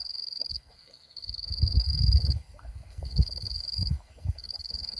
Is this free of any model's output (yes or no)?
no